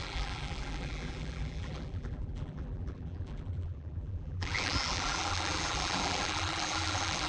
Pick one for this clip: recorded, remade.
remade